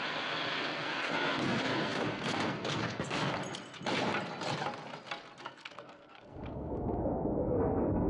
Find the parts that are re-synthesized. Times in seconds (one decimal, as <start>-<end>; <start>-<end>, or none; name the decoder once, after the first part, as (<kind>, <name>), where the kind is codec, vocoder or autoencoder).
0.0-3.4 (codec, SNAC); 5.4-8.1